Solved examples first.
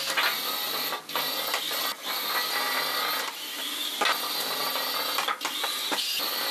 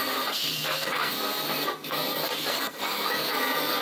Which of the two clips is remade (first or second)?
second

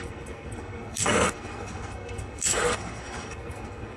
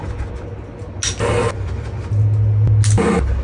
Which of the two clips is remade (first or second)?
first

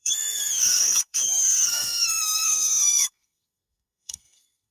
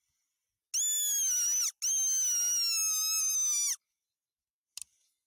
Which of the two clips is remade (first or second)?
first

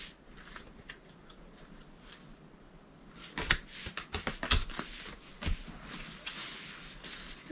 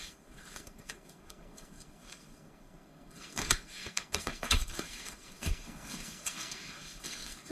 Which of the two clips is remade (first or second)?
second